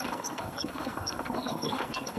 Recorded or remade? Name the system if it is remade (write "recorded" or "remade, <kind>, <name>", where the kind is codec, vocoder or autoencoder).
remade, codec, SNAC